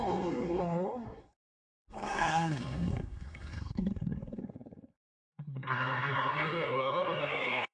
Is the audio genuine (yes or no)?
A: no